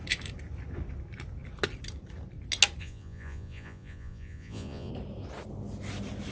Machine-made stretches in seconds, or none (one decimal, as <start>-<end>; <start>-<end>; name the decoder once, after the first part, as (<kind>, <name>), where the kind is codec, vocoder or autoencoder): 2.8-4.9 (vocoder, Vocos)